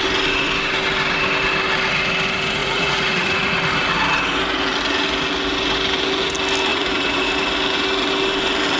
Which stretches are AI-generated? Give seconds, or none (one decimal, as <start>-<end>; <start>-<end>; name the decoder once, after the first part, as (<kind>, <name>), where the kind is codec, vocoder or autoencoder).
2.6-3.6 (vocoder, Vocos); 6.7-7.3